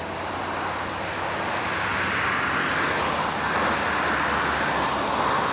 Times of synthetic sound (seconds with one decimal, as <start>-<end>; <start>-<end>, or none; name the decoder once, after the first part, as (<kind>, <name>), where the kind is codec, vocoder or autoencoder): none